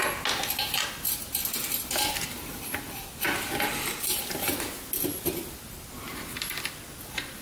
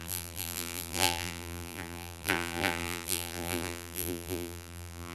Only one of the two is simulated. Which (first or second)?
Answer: second